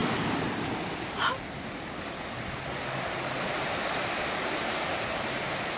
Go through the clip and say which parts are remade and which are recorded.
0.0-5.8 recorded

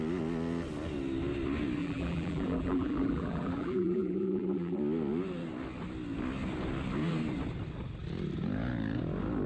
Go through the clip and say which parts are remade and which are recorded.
0.0-1.8 recorded; 1.8-4.8 remade; 4.8-9.5 recorded

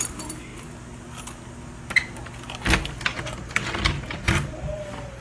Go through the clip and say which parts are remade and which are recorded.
0.0-5.2 recorded

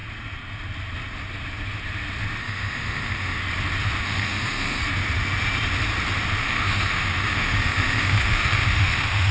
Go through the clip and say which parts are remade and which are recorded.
0.0-2.4 recorded; 2.4-3.4 remade; 3.4-4.0 recorded; 4.0-4.8 remade; 4.8-6.4 recorded; 6.4-9.3 remade

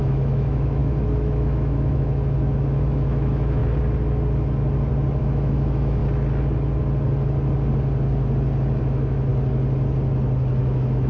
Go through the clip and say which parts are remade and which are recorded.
0.0-3.6 remade; 3.6-5.2 recorded; 5.2-6.0 remade; 6.0-8.8 recorded; 8.8-9.3 remade; 9.3-10.6 recorded; 10.6-11.1 remade

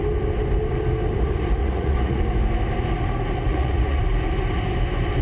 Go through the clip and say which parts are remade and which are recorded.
0.0-1.6 recorded; 1.6-2.2 remade; 2.2-3.5 recorded; 3.5-4.0 remade; 4.0-5.2 recorded